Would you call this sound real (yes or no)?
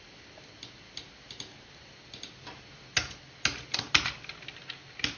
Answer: yes